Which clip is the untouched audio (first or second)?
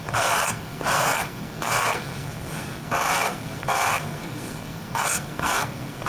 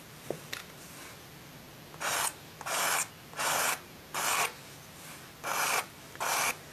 second